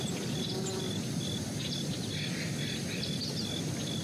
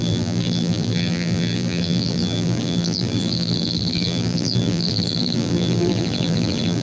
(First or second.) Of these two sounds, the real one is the first